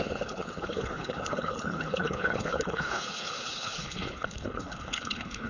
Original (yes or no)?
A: no